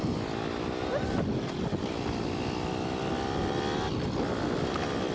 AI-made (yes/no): no